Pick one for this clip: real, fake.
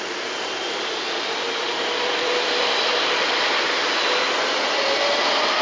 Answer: real